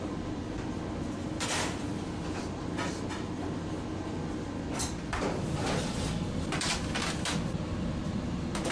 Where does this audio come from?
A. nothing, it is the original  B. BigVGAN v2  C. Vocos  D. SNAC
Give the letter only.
A